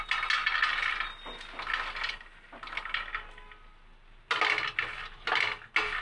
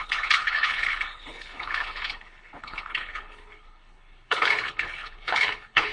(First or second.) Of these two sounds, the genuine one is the first